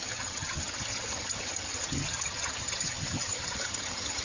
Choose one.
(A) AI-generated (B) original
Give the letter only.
A